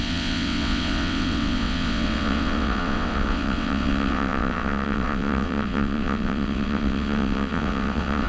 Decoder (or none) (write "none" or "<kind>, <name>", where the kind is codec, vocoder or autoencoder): vocoder, WaveNeXt